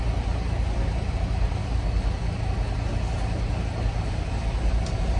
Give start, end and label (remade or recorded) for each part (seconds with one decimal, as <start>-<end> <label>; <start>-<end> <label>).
0.0-5.2 recorded